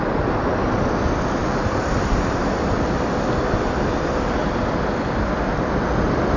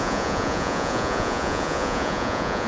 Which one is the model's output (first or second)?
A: second